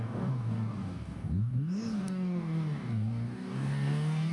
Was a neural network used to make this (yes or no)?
yes